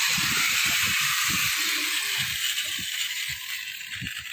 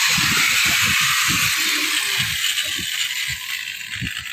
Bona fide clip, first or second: second